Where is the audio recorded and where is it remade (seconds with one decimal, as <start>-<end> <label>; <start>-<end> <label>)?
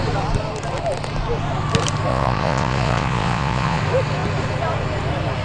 0.0-2.1 recorded; 2.1-3.8 remade; 3.8-5.4 recorded